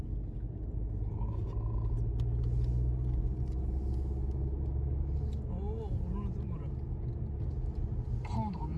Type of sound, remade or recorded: recorded